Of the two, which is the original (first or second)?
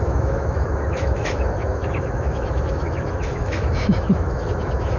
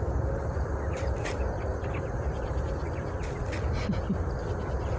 second